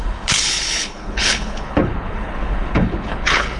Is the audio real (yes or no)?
no